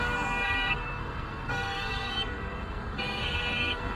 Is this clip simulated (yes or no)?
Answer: yes